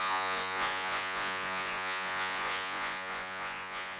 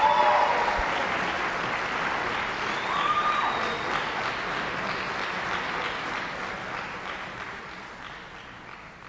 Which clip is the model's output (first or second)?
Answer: first